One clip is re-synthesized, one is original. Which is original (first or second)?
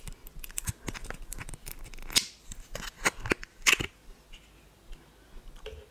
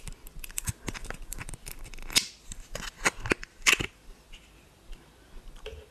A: first